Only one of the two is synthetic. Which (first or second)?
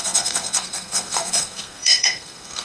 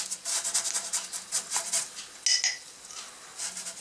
first